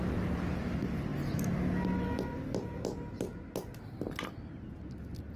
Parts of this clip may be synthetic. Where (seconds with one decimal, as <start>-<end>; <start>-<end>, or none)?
none